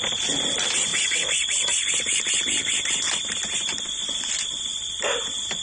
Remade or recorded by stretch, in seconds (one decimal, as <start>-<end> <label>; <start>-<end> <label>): 0.0-0.9 recorded; 0.9-4.3 remade; 4.3-4.7 recorded; 4.7-5.6 remade